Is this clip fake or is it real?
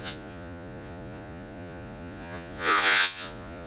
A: fake